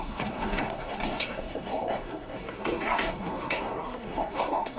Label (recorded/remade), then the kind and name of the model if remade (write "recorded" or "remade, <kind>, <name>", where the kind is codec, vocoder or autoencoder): remade, codec, SNAC